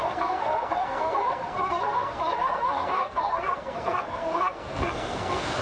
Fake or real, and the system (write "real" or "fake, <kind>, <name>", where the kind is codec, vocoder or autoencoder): fake, codec, SNAC